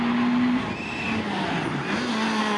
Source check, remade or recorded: recorded